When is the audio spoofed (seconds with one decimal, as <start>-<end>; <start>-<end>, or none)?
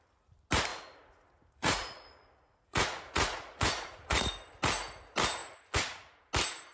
0.7-4.3; 5.4-6.2